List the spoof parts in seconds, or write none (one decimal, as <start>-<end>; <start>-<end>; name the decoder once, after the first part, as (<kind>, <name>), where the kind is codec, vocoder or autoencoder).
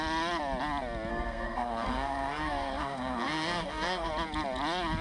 1.1-4.1 (codec, SNAC)